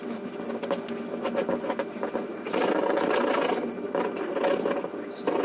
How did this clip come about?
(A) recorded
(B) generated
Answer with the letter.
A